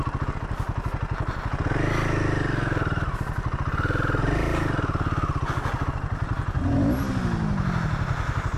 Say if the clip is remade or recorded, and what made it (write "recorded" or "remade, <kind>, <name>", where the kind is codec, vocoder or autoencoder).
recorded